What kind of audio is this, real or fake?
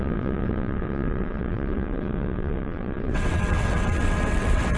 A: fake